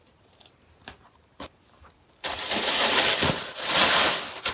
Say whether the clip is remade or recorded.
remade